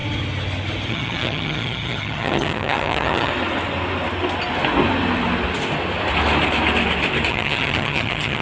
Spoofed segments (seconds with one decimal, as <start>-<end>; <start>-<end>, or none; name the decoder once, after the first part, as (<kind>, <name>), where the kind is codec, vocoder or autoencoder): 0.9-3.3 (vocoder, HiFi-GAN); 7.3-8.4